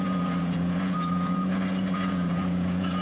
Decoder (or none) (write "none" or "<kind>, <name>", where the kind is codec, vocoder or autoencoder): vocoder, Vocos